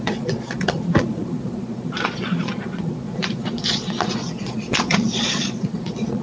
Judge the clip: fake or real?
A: fake